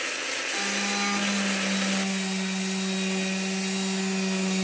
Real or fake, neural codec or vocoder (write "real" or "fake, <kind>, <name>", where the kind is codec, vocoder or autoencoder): real